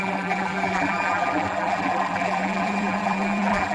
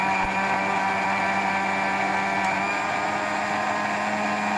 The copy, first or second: first